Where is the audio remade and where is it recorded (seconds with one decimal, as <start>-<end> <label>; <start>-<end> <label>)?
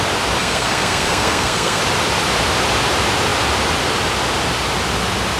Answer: 0.0-0.4 recorded; 0.4-1.8 remade; 1.8-5.4 recorded